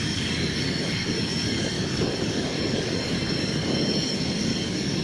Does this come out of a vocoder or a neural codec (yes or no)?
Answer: yes